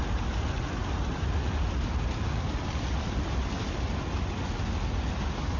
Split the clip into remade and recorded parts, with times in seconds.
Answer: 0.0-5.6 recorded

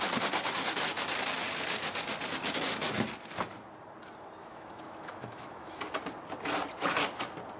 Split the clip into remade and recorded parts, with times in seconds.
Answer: 0.0-4.4 recorded; 4.4-5.9 remade; 5.9-7.6 recorded